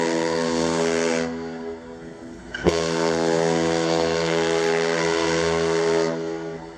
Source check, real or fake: fake